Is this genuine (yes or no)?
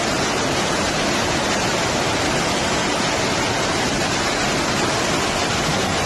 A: yes